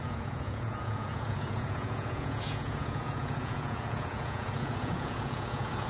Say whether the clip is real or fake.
fake